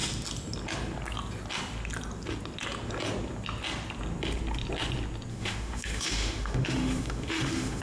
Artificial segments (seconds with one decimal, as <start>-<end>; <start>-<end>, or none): 5.3-7.8